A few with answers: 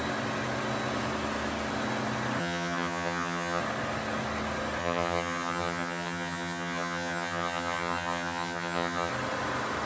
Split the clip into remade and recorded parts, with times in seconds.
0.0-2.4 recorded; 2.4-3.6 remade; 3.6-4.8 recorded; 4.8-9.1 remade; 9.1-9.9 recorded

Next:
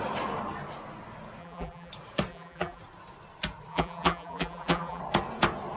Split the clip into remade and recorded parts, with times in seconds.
0.0-1.4 recorded; 1.4-1.9 remade; 1.9-2.3 recorded; 2.3-2.8 remade; 2.8-3.7 recorded; 3.7-5.0 remade; 5.0-5.8 recorded